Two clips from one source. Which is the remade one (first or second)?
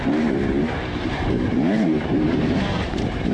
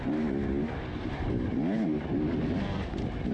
first